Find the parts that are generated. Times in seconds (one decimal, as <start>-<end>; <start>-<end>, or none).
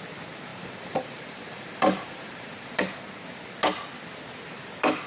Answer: 0.5-2.8